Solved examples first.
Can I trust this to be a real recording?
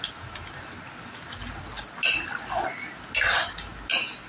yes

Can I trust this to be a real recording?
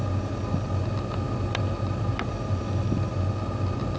yes